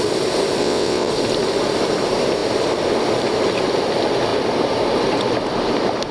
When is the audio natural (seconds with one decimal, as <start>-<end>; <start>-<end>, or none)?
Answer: 0.0-0.6; 1.1-6.1